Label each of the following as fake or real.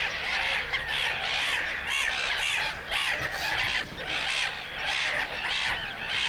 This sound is real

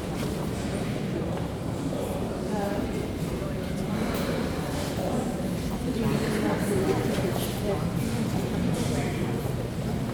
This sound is fake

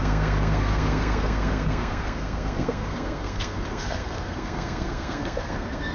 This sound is fake